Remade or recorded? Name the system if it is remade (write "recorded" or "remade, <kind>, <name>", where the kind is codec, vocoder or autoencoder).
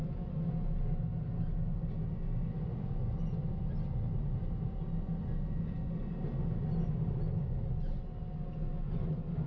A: recorded